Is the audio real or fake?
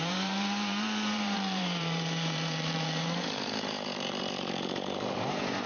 fake